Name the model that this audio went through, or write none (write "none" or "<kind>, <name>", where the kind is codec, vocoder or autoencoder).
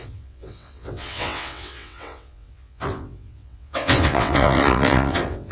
vocoder, WaveNeXt